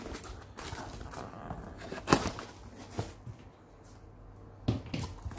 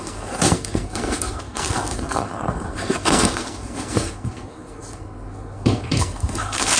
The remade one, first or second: second